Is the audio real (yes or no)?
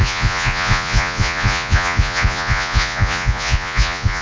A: no